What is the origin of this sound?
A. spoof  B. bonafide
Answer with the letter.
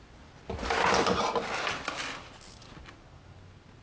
B